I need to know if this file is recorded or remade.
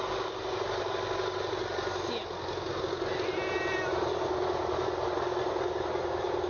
recorded